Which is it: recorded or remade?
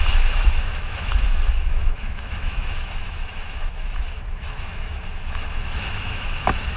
remade